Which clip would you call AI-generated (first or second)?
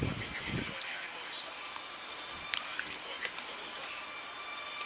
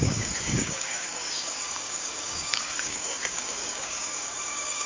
second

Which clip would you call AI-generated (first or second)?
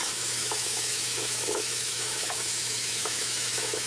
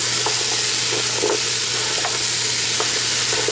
first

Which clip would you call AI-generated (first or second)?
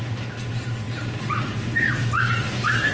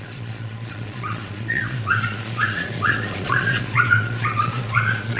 second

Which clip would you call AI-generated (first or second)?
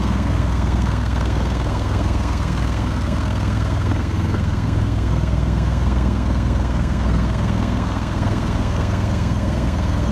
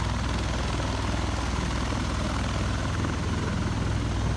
first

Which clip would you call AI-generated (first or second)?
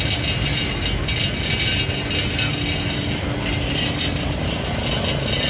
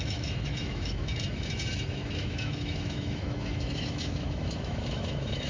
second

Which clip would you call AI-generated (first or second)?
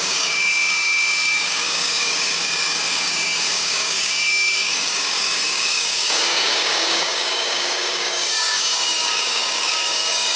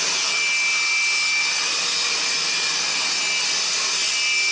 first